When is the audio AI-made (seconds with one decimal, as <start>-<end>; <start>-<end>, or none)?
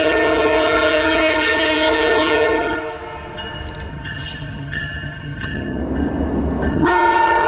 0.0-2.8; 3.9-5.8; 6.7-7.5